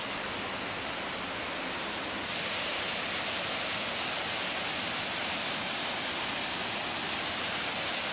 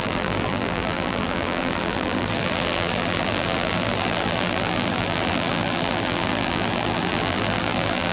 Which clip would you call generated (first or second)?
second